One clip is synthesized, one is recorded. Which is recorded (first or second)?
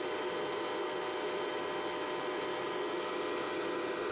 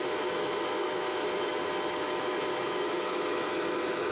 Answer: first